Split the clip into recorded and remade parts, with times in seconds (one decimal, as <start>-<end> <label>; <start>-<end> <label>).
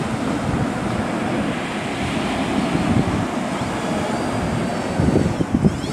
0.0-5.9 recorded